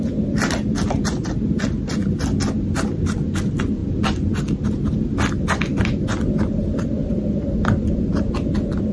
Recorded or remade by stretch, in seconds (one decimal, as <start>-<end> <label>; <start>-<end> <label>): 0.0-8.9 recorded